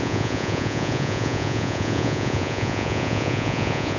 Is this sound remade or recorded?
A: remade